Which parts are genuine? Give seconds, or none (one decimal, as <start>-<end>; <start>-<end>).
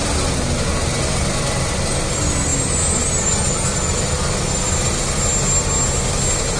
0.0-6.6